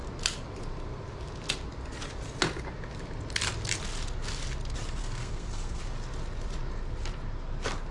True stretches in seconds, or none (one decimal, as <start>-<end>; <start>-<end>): 0.0-5.0; 5.8-7.9